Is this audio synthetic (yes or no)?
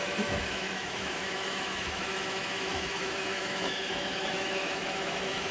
yes